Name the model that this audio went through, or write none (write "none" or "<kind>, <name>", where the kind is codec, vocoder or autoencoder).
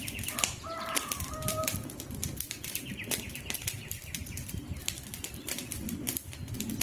vocoder, BigVGAN v2